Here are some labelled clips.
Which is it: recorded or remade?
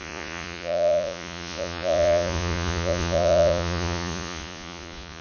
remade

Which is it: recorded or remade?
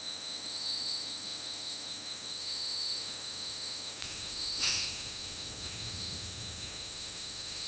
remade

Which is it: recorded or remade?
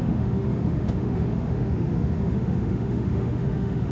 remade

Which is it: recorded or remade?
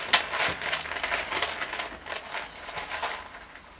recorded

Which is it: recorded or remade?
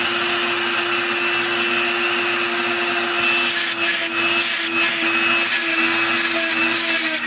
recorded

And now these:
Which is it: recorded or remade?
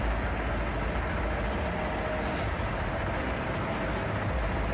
recorded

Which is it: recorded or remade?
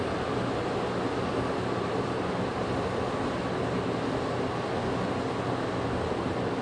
recorded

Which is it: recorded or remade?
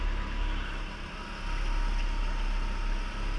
recorded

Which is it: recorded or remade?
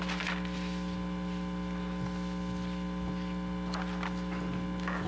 recorded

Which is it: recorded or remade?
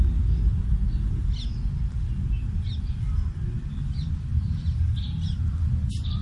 recorded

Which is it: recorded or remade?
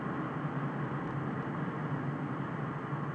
recorded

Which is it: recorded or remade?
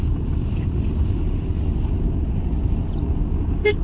recorded